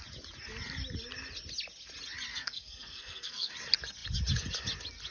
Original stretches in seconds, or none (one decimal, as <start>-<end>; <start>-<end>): 0.0-2.3; 3.5-5.1